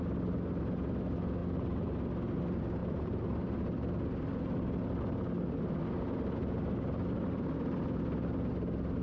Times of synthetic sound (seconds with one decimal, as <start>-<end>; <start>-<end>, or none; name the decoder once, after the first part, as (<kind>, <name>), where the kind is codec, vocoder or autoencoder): 2.8-3.6 (vocoder, BigVGAN v2)